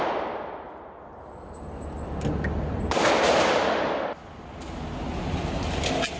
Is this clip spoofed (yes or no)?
no